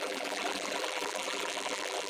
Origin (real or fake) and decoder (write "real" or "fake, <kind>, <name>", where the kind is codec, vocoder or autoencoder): fake, vocoder, BigVGAN v2